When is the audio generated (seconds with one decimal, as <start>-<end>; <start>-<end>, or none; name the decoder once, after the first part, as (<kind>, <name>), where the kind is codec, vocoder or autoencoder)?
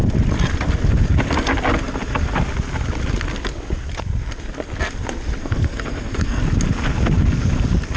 5.4-6.4 (codec, SNAC)